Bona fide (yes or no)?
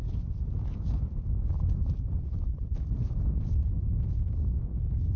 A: yes